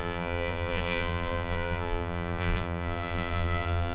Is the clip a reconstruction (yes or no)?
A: yes